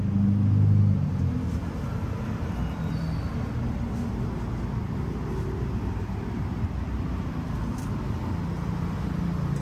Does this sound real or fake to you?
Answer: real